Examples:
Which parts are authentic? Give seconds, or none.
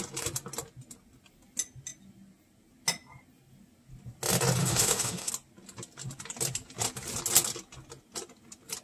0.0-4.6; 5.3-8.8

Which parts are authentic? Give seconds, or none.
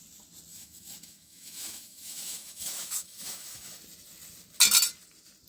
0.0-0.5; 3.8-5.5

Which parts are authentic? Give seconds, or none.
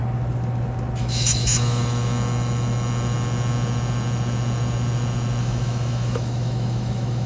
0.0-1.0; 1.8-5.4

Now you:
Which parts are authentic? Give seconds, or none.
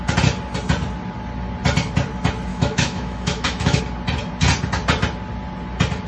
0.0-2.5; 3.8-6.1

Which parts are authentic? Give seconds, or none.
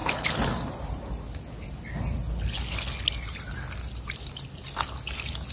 0.0-5.5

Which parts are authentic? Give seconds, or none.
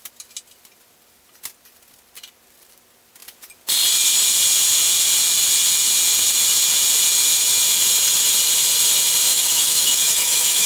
0.0-9.3